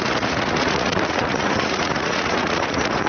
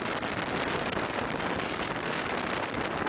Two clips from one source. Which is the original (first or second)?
second